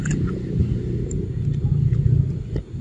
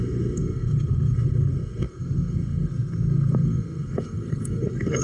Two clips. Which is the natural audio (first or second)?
first